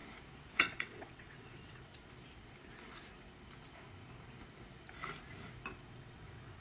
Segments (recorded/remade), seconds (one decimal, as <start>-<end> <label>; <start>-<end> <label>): 0.0-0.5 recorded; 0.5-1.9 remade; 1.9-5.9 recorded; 5.9-6.6 remade